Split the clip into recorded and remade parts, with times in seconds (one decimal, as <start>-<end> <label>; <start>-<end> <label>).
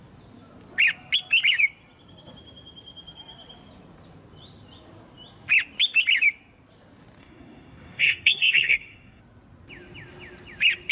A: 0.0-7.2 recorded; 7.2-9.2 remade; 9.2-10.9 recorded